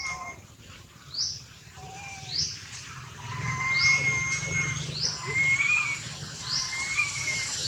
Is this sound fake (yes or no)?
yes